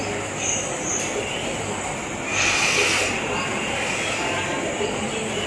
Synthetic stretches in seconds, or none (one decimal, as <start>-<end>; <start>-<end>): none